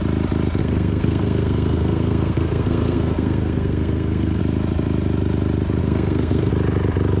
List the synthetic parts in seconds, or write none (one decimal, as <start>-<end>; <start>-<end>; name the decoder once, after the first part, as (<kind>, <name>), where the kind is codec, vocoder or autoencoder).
0.6-4.4 (codec, SNAC); 5.8-6.5